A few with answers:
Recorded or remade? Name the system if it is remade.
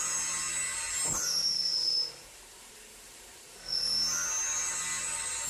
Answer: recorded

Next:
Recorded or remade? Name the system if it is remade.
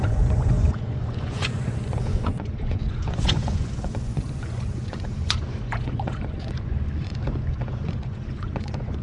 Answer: remade, vocoder, Vocos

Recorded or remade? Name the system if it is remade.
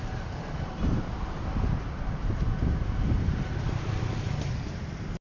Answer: remade, vocoder, BigVGAN v2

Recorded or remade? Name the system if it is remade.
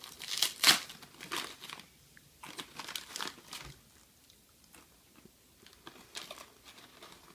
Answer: recorded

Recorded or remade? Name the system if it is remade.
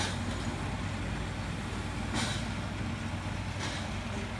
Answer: recorded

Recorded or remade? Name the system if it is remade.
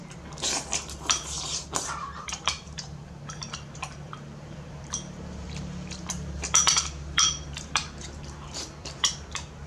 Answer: remade, vocoder, BigVGAN v2